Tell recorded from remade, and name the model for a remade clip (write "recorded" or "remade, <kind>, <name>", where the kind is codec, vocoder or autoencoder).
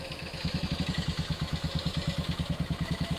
remade, autoencoder, DAC-VAE